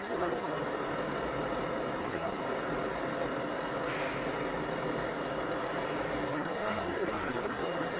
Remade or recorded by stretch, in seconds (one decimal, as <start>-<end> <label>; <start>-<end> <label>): 0.0-0.6 remade; 0.6-2.0 recorded; 2.0-2.4 remade; 2.4-6.3 recorded; 6.3-8.0 remade

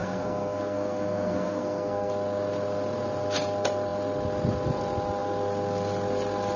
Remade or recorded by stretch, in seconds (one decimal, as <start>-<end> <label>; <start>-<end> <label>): 0.0-2.1 remade; 2.1-6.6 recorded

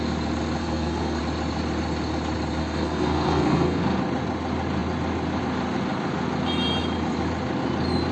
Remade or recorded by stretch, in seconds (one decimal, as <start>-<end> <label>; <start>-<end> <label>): 0.0-0.6 recorded; 0.6-1.2 remade; 1.2-2.6 recorded; 2.6-3.8 remade; 3.8-8.1 recorded

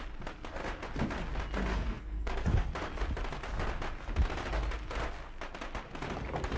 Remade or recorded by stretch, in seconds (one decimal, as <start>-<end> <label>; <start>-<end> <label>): 0.0-1.6 recorded; 1.6-2.7 remade; 2.7-6.6 recorded

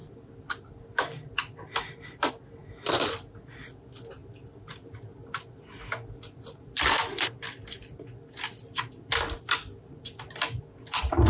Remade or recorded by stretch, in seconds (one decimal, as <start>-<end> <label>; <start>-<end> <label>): 0.0-11.3 recorded

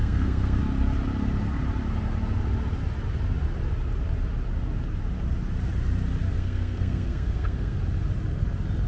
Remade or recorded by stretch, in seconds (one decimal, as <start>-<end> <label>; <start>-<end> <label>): 0.0-0.6 remade; 0.6-6.3 recorded; 6.3-7.8 remade; 7.8-8.9 recorded